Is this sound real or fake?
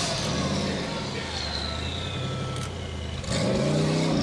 real